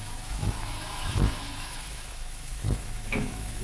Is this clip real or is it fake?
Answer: fake